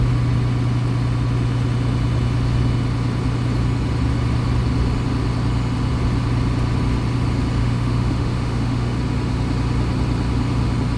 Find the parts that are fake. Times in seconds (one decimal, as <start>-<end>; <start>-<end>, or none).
7.6-9.0